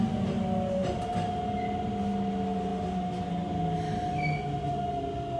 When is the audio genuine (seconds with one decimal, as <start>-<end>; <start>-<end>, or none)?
0.0-5.4